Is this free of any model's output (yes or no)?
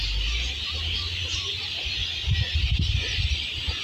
yes